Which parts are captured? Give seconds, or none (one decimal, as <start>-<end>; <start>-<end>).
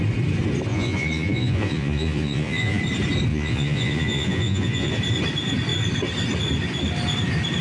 0.0-0.7; 2.8-3.3; 4.9-7.6